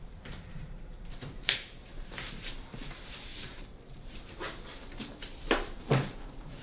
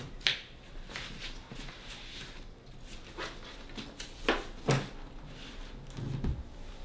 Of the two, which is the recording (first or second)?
second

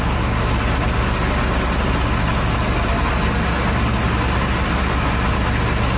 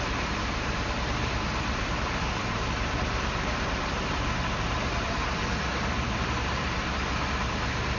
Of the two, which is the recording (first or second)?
first